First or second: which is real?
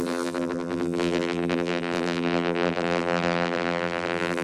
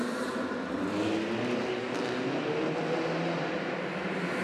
second